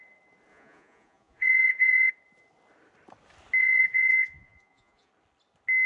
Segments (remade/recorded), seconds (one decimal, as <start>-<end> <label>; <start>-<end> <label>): 0.0-0.5 recorded; 0.5-2.1 remade; 2.1-3.6 recorded; 3.6-5.1 remade; 5.1-5.9 recorded